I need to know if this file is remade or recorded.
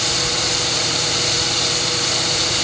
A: remade